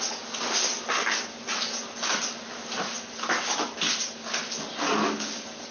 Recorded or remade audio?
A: recorded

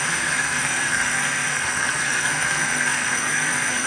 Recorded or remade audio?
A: remade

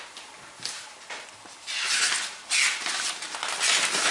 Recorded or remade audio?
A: recorded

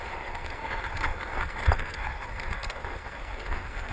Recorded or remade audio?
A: remade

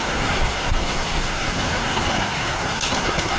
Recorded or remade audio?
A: remade